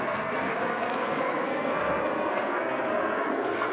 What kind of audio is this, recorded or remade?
remade